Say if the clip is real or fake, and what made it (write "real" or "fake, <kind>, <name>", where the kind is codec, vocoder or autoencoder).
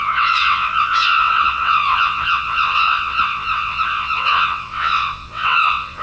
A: fake, vocoder, WaveNeXt